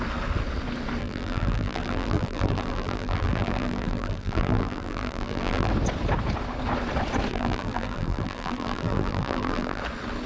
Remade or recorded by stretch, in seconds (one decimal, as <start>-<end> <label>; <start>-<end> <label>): 0.0-1.0 recorded; 1.0-5.7 remade; 5.7-7.3 recorded; 7.3-9.8 remade; 9.8-10.3 recorded

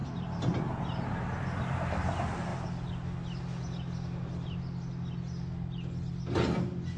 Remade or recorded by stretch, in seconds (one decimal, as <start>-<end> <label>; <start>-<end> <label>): 0.0-1.0 remade; 1.0-7.0 recorded

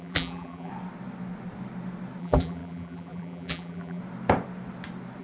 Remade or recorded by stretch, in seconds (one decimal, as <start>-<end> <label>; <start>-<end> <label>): 0.0-0.7 remade; 0.7-2.2 recorded; 2.2-4.0 remade; 4.0-5.2 recorded

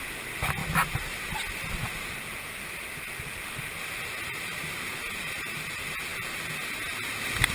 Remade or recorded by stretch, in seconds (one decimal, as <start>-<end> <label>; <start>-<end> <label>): 0.0-7.5 recorded

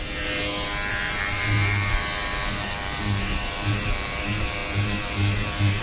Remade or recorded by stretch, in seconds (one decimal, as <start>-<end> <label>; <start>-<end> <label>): 0.0-0.4 remade; 0.4-0.9 recorded; 0.9-5.8 remade

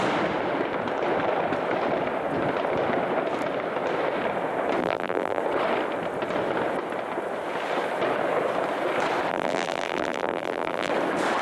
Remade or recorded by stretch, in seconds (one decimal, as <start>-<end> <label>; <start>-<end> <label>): 0.0-4.8 recorded; 4.8-5.4 remade; 5.4-9.3 recorded; 9.3-10.9 remade; 10.9-11.4 recorded

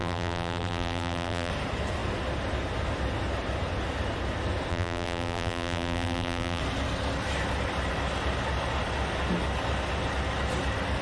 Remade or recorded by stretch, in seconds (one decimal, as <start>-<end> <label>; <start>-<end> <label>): 0.0-1.5 remade; 1.5-4.7 recorded; 4.7-6.6 remade; 6.6-11.0 recorded

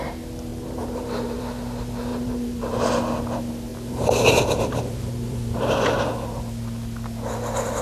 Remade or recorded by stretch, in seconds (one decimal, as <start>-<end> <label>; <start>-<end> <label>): 0.0-0.5 recorded; 0.5-1.4 remade; 1.4-2.1 recorded; 2.1-2.9 remade; 2.9-3.7 recorded; 3.7-6.0 remade; 6.0-7.8 recorded